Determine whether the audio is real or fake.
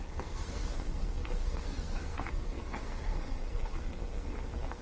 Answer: fake